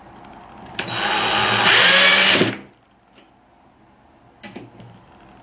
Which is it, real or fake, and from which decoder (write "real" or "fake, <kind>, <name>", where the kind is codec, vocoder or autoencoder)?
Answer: real